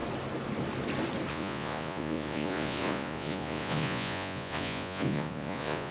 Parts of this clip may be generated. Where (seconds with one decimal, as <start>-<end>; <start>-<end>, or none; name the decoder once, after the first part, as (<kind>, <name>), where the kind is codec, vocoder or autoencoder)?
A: 1.3-5.9 (vocoder, Vocos)